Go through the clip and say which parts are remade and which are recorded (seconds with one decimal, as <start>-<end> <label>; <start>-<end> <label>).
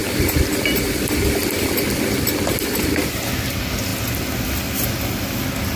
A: 0.0-5.8 recorded